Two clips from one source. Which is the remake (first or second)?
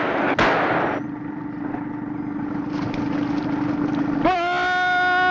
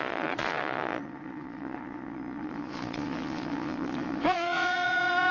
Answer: second